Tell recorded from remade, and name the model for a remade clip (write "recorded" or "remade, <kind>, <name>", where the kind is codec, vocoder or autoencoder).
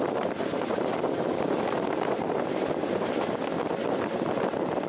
recorded